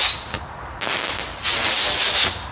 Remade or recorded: recorded